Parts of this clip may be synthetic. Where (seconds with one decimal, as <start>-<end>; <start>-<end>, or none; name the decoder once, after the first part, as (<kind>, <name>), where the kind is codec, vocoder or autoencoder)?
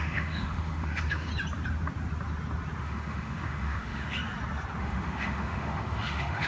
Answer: 0.0-1.3 (autoencoder, DAC-VAE); 2.8-4.2; 4.8-6.5